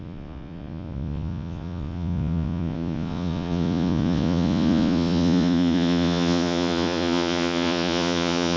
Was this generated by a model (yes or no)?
yes